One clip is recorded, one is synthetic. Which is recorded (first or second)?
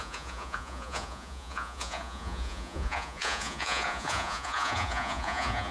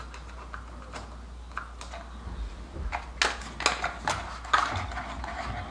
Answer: second